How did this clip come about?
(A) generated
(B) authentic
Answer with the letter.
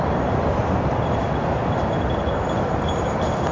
B